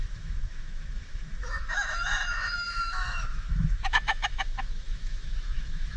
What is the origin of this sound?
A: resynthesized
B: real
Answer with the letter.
A